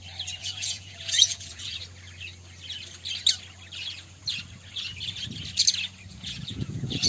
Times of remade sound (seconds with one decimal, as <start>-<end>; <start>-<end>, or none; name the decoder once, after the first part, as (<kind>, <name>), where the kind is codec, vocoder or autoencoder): 0.4-1.8 (vocoder, Vocos); 6.1-7.1